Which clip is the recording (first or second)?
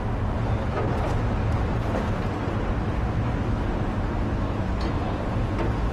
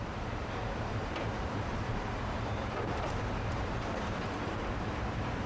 first